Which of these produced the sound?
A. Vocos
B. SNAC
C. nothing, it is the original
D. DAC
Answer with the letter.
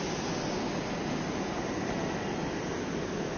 C